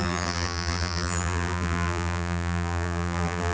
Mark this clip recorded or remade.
remade